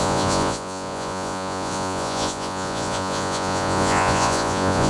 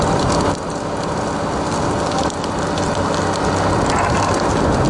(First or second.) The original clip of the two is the second